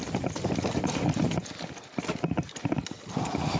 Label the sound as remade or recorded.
recorded